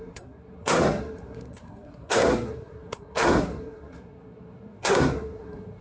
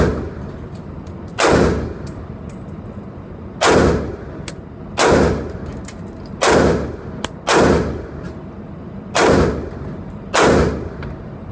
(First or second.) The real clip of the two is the second